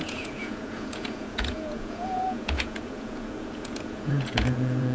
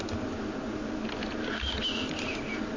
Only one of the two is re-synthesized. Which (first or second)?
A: first